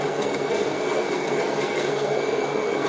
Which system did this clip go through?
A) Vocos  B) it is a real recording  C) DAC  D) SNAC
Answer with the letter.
D